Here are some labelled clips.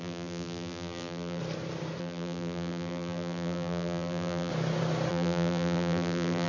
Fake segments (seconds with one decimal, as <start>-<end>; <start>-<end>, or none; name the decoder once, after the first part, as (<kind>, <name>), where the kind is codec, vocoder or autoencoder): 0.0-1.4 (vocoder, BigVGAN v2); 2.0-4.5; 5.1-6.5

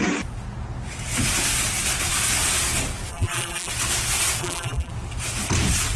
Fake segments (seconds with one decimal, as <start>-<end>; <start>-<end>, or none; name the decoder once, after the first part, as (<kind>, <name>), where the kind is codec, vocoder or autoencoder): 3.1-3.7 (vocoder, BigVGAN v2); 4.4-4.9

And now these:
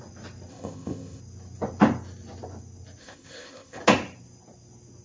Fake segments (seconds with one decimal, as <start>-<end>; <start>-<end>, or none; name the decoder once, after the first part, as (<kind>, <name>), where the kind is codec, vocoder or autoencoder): 0.5-1.2 (codec, ZipCodec); 3.0-3.8

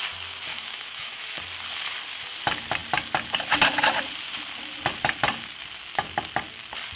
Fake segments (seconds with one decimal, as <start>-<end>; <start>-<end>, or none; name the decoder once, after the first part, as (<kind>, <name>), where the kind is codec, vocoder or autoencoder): 0.5-1.4 (autoencoder, DAC-VAE)